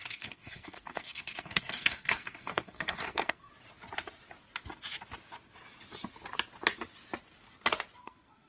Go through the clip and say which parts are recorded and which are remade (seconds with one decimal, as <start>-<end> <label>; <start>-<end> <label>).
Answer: 0.0-3.5 remade; 3.5-8.0 recorded; 8.0-8.5 remade